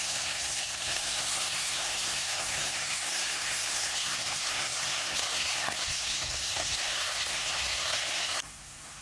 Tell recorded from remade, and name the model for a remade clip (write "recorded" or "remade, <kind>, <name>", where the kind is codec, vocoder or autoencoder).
remade, codec, SNAC